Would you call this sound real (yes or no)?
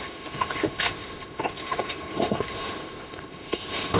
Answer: no